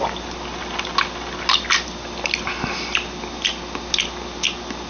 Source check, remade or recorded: recorded